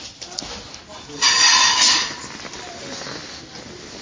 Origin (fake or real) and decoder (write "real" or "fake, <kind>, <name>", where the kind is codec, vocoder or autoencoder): real